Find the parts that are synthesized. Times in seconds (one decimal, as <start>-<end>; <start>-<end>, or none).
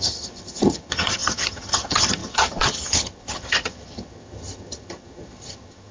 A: 0.0-5.9